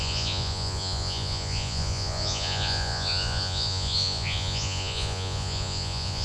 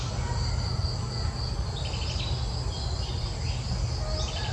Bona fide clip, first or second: second